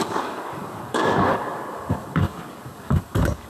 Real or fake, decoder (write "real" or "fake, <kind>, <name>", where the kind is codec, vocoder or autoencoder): fake, codec, DAC